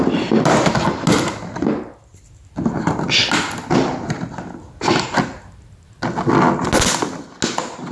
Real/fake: real